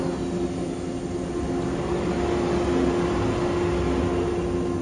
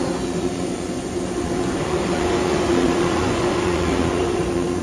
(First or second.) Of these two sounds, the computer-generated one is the second